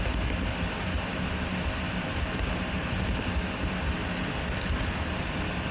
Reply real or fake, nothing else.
real